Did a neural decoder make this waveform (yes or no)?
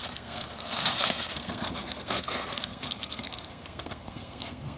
yes